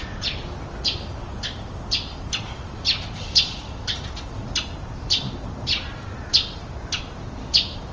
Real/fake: real